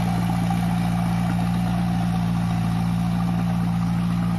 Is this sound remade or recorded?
recorded